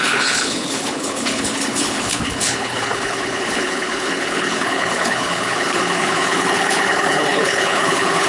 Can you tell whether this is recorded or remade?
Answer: remade